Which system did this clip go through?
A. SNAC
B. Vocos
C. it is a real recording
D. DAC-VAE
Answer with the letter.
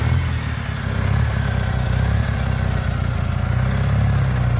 C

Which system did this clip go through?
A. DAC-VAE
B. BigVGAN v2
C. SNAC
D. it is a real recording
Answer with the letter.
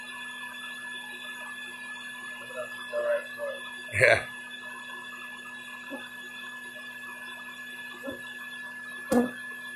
D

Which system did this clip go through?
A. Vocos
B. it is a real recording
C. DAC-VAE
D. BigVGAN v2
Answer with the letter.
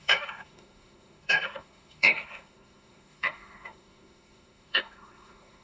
C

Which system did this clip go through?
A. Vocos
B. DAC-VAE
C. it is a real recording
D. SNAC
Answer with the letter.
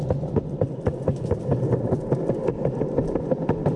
C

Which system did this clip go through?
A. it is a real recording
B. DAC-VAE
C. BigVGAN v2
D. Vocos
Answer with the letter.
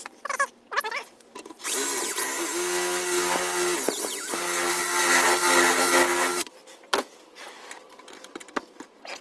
A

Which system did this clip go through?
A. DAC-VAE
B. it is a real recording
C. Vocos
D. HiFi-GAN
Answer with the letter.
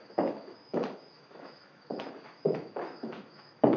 A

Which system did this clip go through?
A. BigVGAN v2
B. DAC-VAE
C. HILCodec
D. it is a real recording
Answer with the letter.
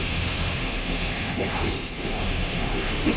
B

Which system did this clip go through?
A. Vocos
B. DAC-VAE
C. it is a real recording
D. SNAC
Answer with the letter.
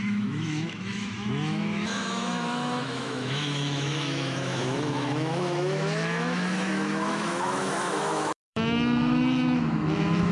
B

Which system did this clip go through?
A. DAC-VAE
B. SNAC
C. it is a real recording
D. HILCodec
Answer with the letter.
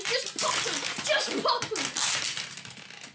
C